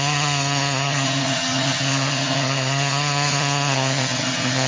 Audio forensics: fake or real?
fake